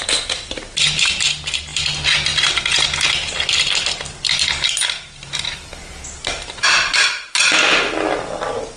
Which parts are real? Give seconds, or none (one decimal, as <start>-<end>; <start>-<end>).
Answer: 0.0-8.8